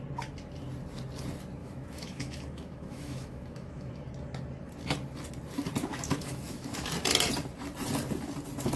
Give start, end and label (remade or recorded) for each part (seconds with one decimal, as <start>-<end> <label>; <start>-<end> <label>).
0.0-1.6 recorded; 1.6-3.9 remade; 3.9-5.9 recorded; 5.9-6.8 remade; 6.8-8.8 recorded

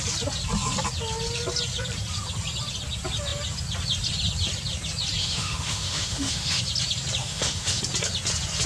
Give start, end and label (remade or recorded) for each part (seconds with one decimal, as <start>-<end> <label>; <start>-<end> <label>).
0.0-5.2 recorded; 5.2-6.6 remade; 6.6-7.2 recorded; 7.2-7.8 remade; 7.8-8.7 recorded